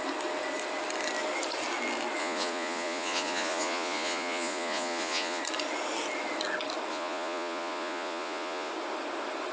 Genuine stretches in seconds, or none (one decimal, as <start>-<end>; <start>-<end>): 0.0-2.2; 5.4-6.9; 8.7-9.5